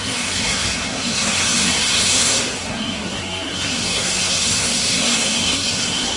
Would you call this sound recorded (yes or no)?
no